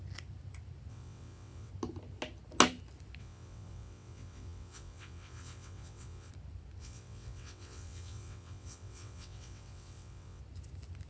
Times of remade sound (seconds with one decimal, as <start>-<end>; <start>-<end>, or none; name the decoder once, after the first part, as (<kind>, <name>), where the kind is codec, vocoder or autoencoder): 0.9-1.7 (vocoder, WaveNeXt); 3.2-6.3; 6.8-10.4

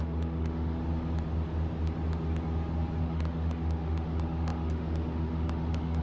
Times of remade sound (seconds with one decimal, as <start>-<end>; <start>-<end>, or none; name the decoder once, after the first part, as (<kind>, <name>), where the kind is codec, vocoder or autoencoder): 0.0-0.8 (autoencoder, DAC-VAE); 3.0-6.0